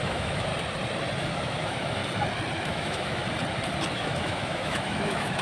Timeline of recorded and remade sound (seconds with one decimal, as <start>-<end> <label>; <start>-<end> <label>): 0.0-0.5 remade; 0.5-1.3 recorded; 1.3-2.0 remade; 2.0-2.6 recorded; 2.6-3.2 remade; 3.2-3.9 recorded; 3.9-5.4 remade